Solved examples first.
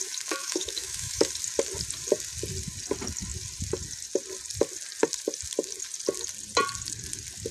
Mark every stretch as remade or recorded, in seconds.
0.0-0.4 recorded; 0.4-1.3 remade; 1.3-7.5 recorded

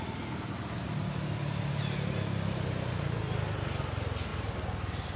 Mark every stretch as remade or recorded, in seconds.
0.0-5.2 recorded

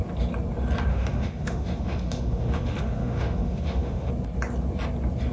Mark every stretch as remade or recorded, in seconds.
0.0-0.9 recorded; 0.9-4.1 remade; 4.1-5.3 recorded

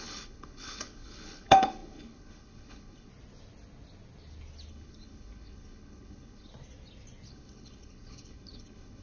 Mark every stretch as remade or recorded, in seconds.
0.0-3.1 remade; 3.1-4.7 recorded; 4.7-6.5 remade; 6.5-7.3 recorded; 7.3-9.0 remade

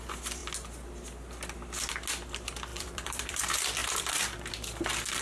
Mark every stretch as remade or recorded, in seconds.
0.0-2.7 recorded; 2.7-3.4 remade; 3.4-3.8 recorded; 3.8-4.5 remade; 4.5-5.2 recorded